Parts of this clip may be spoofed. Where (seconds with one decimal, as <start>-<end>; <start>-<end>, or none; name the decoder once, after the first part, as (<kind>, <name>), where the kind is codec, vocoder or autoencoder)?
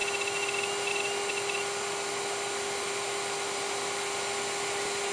none